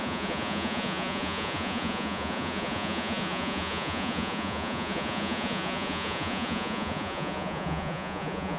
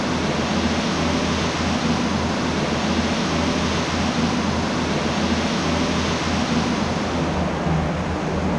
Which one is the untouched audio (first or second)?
second